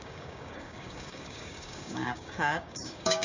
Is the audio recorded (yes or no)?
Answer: no